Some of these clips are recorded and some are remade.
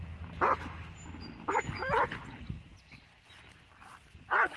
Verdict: recorded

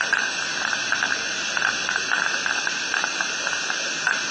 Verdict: recorded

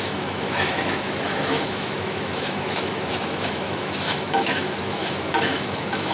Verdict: remade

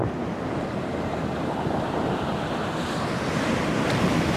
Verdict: recorded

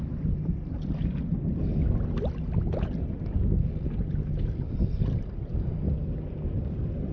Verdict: recorded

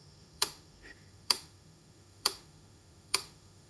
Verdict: remade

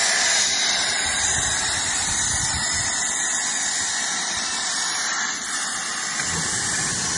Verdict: recorded